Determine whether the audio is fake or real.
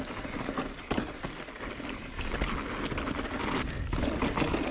real